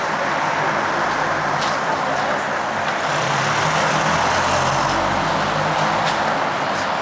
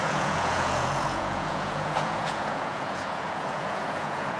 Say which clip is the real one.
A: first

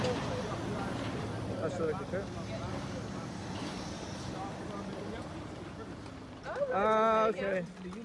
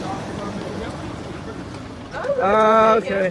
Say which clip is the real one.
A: first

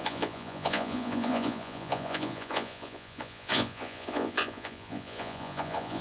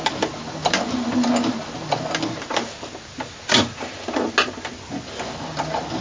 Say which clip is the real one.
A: second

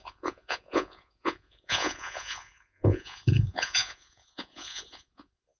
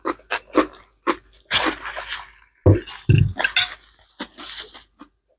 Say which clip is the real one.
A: second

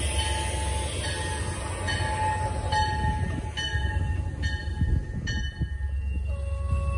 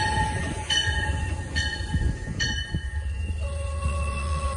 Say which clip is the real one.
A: first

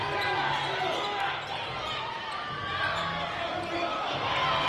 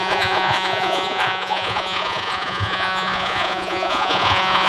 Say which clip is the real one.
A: first